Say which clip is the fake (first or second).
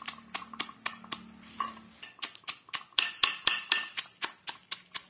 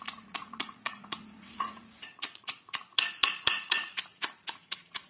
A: second